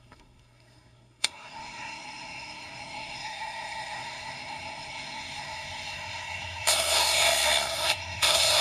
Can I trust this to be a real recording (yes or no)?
no